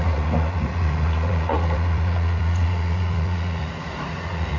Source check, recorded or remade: remade